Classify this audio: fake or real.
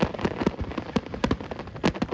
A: real